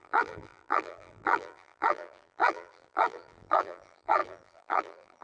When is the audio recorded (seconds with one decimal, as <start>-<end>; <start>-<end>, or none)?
none